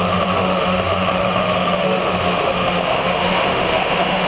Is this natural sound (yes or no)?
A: no